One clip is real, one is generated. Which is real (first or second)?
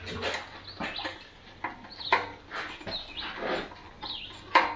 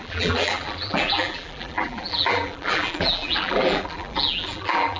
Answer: first